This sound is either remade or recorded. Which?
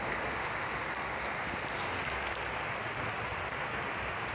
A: recorded